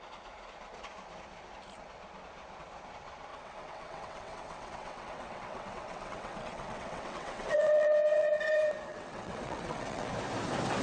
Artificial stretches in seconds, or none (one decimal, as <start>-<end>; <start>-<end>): 3.3-8.4; 8.9-10.1